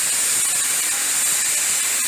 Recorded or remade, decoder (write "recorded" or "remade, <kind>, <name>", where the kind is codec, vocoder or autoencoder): recorded